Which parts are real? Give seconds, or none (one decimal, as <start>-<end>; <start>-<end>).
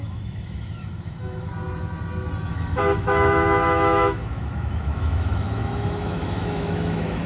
1.5-2.5